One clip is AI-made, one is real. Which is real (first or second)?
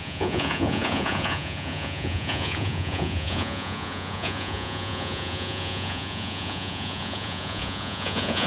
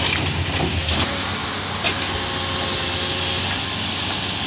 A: second